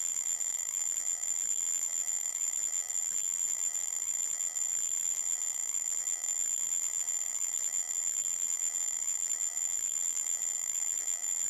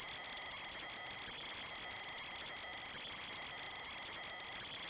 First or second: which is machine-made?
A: first